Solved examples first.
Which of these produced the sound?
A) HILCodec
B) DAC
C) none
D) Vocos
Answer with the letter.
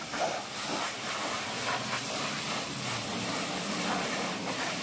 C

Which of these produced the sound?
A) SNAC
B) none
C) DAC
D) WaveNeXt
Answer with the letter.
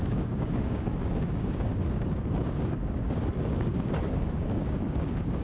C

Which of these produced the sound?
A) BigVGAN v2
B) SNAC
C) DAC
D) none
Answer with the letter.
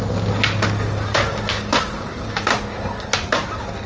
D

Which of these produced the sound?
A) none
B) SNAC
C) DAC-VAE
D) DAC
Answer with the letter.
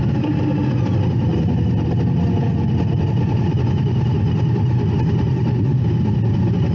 A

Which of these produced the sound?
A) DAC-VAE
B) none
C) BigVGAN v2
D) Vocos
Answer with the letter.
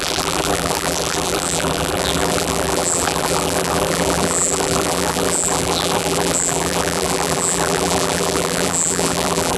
C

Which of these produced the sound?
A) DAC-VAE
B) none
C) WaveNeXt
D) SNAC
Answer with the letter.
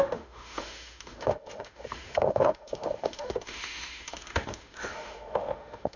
A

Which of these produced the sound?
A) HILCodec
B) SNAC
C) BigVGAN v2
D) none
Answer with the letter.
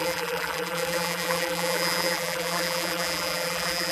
C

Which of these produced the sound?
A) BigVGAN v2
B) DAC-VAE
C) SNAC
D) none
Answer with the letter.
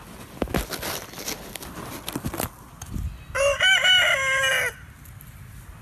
D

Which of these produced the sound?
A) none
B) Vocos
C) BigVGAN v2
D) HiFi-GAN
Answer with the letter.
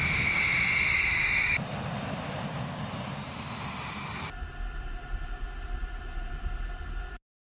A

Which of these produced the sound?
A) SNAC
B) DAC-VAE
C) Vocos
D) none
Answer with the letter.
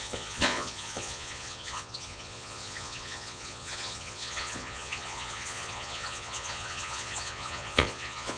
C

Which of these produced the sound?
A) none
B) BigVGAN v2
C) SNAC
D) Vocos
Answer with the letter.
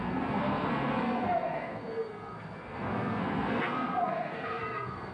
C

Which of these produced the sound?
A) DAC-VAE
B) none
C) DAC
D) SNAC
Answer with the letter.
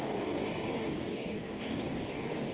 C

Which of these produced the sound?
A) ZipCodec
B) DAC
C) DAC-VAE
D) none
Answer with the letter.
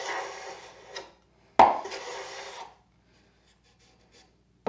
D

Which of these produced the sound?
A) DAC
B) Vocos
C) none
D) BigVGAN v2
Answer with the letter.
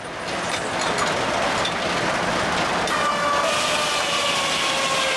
C